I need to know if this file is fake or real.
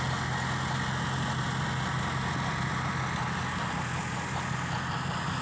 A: real